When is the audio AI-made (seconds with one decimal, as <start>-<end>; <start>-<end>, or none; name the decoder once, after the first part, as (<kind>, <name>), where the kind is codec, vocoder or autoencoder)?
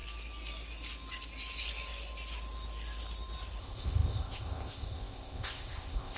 3.6-6.2 (codec, ZipCodec)